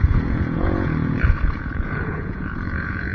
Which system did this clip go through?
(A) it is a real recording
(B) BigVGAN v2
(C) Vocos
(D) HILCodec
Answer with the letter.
C